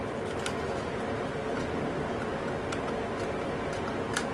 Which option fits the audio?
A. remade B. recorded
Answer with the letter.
B